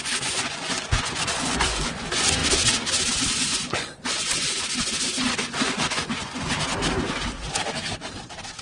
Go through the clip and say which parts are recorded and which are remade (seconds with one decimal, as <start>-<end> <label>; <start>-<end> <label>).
0.0-2.4 remade; 2.4-3.3 recorded; 3.3-6.5 remade; 6.5-8.6 recorded